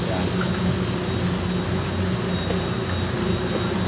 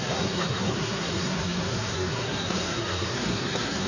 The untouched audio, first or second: first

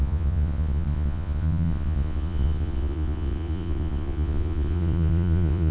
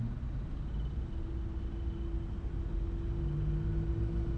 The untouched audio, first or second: second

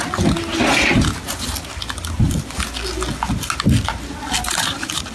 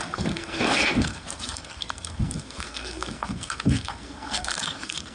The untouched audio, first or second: first